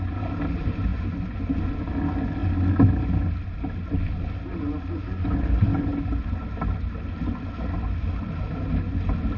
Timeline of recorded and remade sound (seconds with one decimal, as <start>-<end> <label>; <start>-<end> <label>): 0.0-9.4 recorded